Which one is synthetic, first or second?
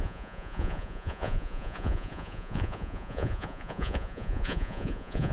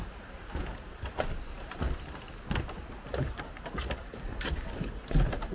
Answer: first